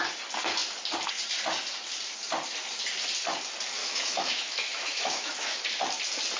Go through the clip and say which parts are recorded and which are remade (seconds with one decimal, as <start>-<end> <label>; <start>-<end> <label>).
0.0-3.8 recorded; 3.8-5.6 remade; 5.6-6.4 recorded